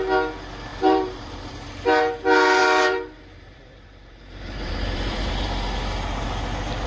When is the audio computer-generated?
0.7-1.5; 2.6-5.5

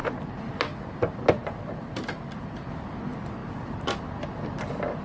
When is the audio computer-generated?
0.0-2.7

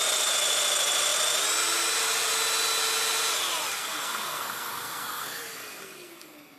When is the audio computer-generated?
3.7-6.6

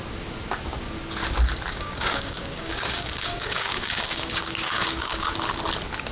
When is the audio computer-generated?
1.7-5.3

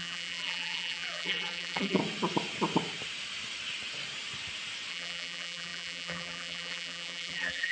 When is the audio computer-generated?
0.0-2.0; 4.9-7.7